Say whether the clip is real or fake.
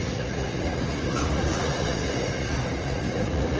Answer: fake